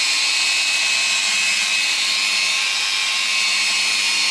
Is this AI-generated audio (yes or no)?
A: no